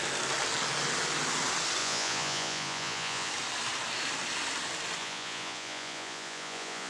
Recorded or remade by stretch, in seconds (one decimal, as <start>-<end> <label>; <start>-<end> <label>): 0.0-1.8 recorded; 1.8-3.3 remade; 3.3-5.0 recorded; 5.0-6.9 remade